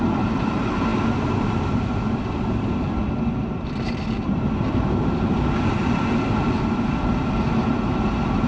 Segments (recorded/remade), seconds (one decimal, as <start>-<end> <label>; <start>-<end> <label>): 0.0-8.5 recorded